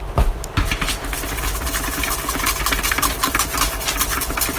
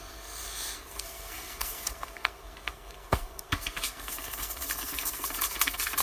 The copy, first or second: second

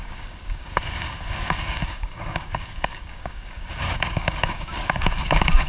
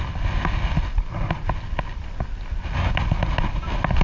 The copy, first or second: first